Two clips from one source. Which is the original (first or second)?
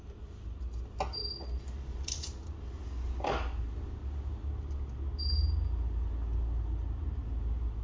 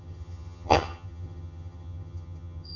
first